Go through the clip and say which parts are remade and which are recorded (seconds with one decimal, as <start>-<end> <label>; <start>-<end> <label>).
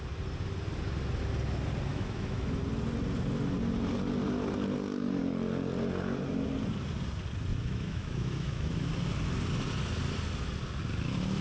0.0-1.9 recorded; 1.9-2.6 remade; 2.6-7.5 recorded; 7.5-8.9 remade; 8.9-11.4 recorded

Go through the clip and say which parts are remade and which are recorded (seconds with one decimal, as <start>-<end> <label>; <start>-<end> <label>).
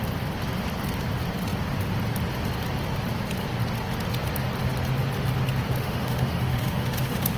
0.0-5.8 recorded; 5.8-7.4 remade